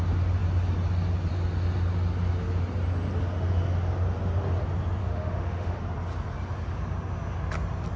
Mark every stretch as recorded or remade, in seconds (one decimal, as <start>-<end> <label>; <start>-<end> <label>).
0.0-5.0 recorded; 5.0-5.8 remade; 5.8-8.0 recorded